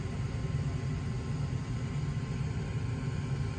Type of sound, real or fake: real